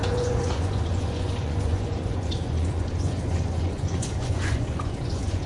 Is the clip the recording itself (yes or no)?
no